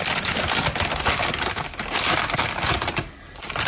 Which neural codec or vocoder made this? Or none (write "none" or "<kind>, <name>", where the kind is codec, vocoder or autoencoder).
none